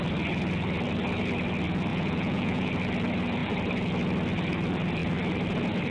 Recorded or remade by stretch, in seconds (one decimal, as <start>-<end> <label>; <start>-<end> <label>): 0.0-1.9 recorded; 1.9-2.7 remade; 2.7-5.9 recorded